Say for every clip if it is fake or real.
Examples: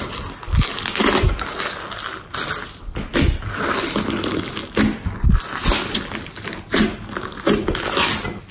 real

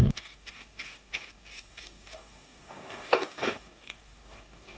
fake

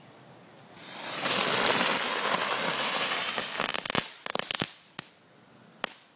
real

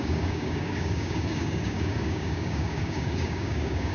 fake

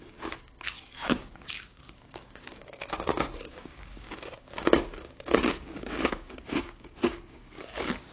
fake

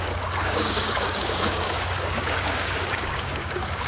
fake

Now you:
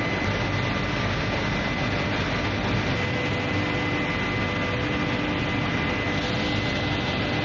real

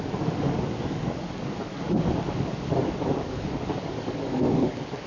fake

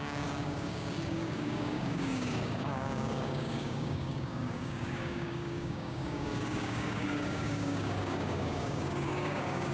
fake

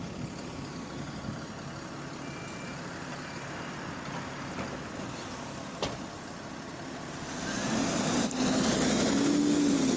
real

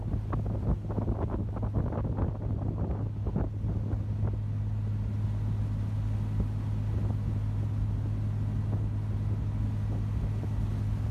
real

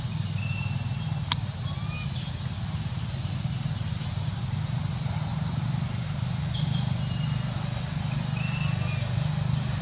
real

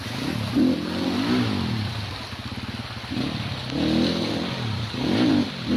real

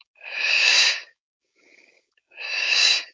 fake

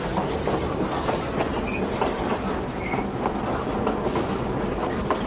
real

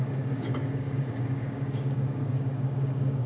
fake